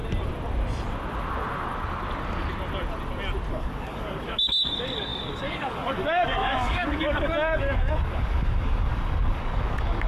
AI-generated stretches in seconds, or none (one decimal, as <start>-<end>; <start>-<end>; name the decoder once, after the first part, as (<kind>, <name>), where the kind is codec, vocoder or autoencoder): 3.5-10.1 (codec, DAC)